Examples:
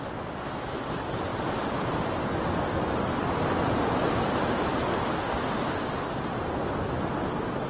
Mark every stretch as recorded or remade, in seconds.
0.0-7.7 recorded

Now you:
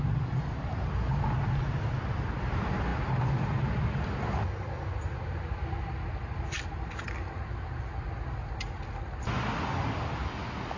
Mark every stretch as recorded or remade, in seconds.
0.0-10.8 recorded

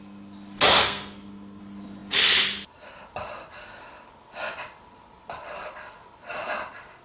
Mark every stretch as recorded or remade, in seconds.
0.0-0.8 recorded; 0.8-1.6 remade; 1.6-7.0 recorded

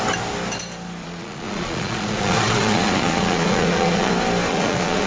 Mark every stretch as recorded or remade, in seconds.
0.0-1.0 recorded; 1.0-4.1 remade; 4.1-4.5 recorded; 4.5-5.1 remade

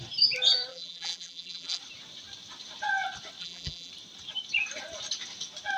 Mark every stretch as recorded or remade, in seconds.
0.0-0.7 recorded; 0.7-1.8 remade; 1.8-3.4 recorded; 3.4-3.9 remade; 3.9-5.8 recorded

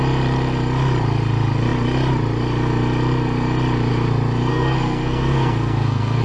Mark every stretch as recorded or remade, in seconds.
0.0-4.5 recorded; 4.5-6.2 remade

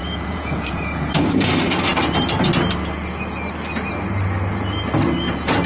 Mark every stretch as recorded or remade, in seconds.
0.0-1.1 remade; 1.1-5.7 recorded